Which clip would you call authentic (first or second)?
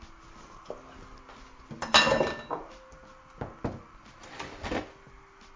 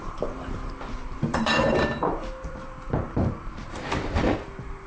first